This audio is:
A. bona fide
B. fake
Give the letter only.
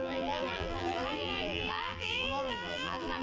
B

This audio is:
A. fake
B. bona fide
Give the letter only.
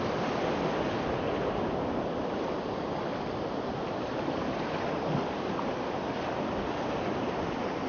B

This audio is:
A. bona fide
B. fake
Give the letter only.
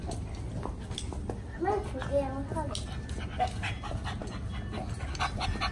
A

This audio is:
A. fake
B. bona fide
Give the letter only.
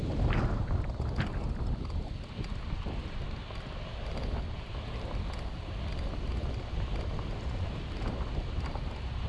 B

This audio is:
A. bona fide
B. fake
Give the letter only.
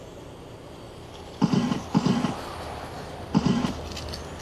A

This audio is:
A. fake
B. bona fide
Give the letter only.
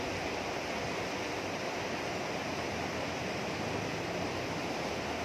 B